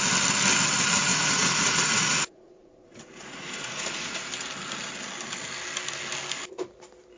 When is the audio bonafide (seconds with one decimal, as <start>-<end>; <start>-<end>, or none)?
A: 0.0-1.1; 4.3-7.2